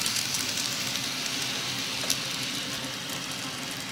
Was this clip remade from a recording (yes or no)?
no